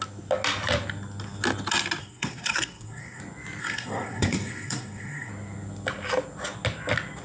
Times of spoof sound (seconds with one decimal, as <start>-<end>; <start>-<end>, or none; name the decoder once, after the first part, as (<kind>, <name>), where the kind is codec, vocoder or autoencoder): 2.0-3.2 (codec, SNAC); 3.6-5.3